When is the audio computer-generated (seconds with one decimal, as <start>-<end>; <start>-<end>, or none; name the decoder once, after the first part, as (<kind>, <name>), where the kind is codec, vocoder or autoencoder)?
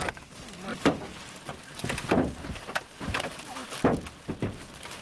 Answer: none